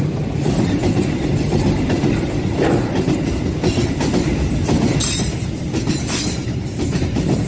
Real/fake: fake